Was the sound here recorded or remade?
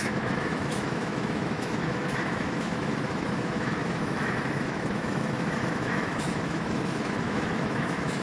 remade